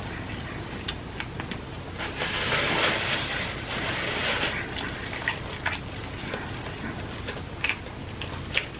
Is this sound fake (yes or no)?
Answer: no